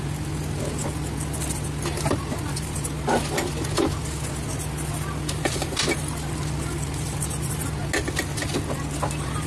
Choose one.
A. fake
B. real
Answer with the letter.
B